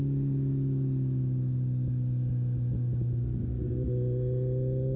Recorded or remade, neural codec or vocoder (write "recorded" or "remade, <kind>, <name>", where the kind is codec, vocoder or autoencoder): recorded